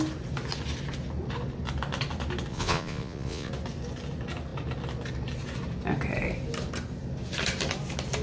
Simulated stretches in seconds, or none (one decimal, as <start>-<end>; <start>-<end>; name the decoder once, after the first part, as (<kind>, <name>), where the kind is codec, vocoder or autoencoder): 2.5-3.5 (vocoder, Vocos)